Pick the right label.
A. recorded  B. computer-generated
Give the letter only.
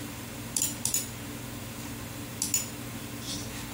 A